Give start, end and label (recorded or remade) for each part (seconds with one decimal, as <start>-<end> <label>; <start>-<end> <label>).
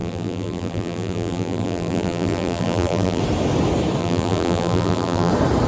0.0-3.2 remade; 3.2-4.0 recorded; 4.0-5.3 remade; 5.3-5.7 recorded